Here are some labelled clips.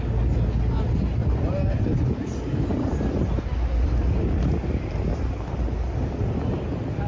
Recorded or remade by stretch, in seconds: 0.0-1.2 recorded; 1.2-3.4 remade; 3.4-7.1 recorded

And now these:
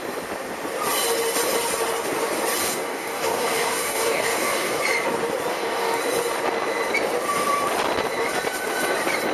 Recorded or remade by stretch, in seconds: 0.0-2.6 recorded; 2.6-4.8 remade; 4.8-5.5 recorded; 5.5-6.0 remade; 6.0-9.3 recorded